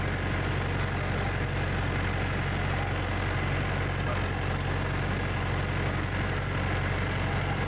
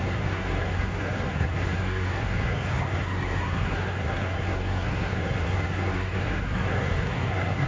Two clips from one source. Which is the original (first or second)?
first